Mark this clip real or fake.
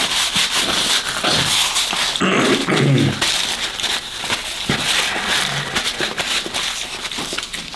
real